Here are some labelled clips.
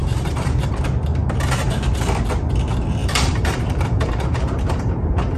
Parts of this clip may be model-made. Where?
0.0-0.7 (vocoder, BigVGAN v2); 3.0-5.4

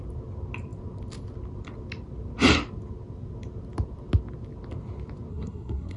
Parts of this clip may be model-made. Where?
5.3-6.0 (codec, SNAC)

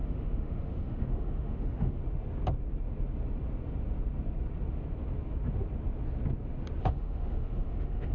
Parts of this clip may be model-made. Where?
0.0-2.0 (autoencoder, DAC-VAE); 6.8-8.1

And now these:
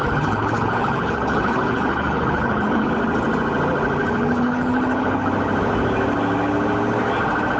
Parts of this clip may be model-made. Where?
0.0-2.9 (codec, HILCodec); 4.0-5.3